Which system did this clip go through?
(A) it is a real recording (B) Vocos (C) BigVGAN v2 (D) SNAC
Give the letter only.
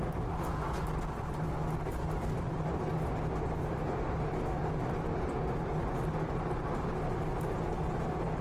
A